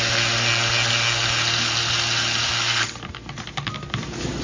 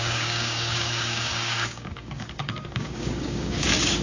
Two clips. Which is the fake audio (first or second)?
second